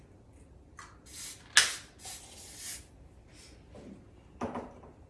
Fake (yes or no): no